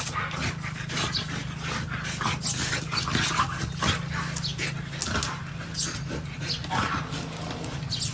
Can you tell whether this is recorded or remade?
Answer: recorded